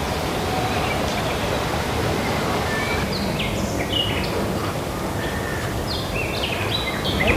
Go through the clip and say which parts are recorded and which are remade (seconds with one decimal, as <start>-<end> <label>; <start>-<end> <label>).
0.0-7.4 recorded